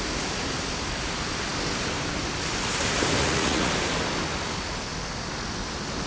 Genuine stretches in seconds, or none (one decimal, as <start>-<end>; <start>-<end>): 0.0-3.2; 3.7-6.1